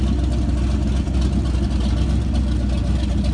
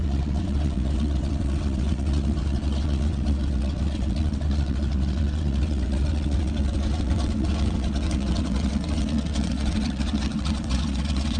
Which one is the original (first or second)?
first